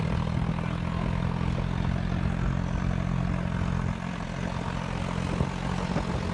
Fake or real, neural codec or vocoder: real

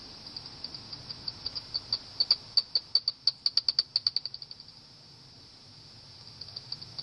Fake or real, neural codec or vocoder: real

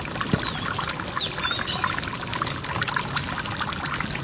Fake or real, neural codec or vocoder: real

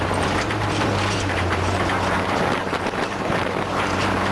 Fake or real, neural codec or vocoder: fake, vocoder, BigVGAN v2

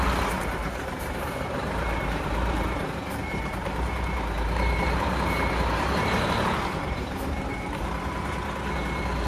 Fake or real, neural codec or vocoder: fake, vocoder, BigVGAN v2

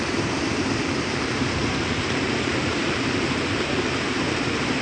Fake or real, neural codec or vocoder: fake, vocoder, BigVGAN v2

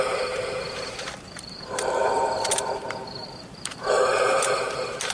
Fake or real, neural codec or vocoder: fake, vocoder, BigVGAN v2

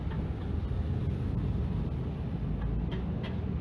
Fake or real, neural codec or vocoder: real